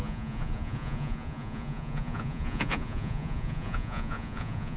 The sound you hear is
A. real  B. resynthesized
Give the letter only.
B